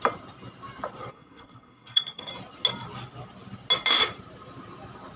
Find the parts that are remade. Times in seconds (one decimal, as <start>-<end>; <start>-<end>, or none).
1.1-2.3